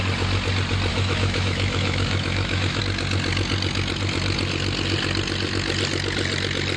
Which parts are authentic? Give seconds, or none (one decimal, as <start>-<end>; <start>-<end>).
0.0-0.9; 2.8-6.8